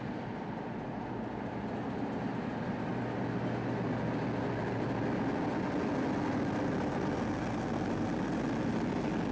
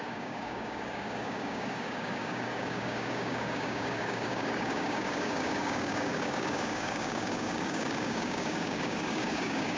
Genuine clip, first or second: first